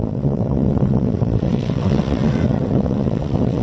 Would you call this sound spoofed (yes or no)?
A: yes